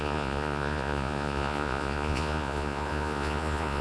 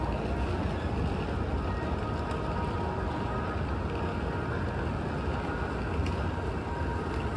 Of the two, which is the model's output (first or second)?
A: first